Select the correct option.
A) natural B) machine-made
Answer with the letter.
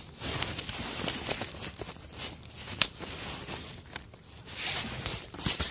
A